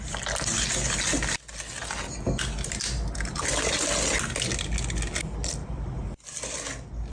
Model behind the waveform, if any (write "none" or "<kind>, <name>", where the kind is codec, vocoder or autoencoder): none